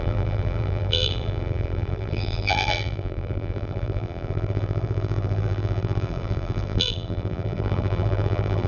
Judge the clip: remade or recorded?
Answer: remade